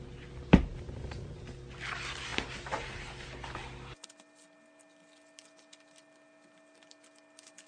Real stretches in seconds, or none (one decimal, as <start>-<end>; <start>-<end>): 0.0-0.7; 1.3-2.3; 3.1-7.7